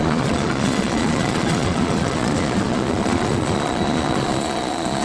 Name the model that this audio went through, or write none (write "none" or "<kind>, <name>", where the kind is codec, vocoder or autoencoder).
vocoder, Vocos